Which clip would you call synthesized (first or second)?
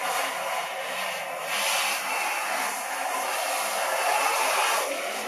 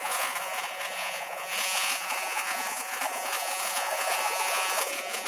second